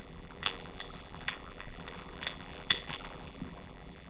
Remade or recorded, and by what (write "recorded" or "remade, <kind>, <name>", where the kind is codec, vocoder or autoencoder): remade, vocoder, BigVGAN v2